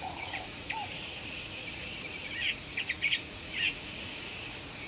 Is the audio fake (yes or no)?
yes